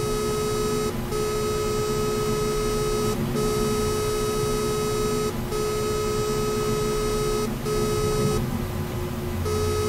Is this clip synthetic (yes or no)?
no